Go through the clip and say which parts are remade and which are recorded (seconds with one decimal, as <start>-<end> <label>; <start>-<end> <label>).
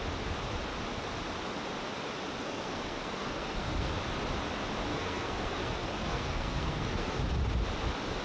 0.0-2.4 recorded; 2.4-3.9 remade; 3.9-4.9 recorded; 4.9-7.2 remade; 7.2-8.2 recorded